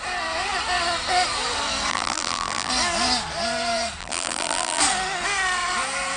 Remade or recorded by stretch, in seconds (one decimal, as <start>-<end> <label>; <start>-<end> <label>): 0.0-1.9 recorded; 1.9-2.7 remade; 2.7-4.0 recorded; 4.0-4.8 remade; 4.8-6.2 recorded